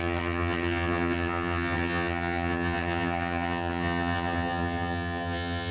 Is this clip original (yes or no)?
no